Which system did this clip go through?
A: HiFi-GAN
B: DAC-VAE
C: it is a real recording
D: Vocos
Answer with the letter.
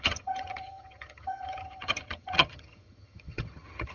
A